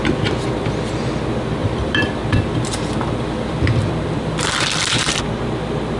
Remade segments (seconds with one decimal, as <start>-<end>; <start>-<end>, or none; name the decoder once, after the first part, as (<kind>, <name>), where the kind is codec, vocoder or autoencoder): 1.6-5.2 (vocoder, BigVGAN v2)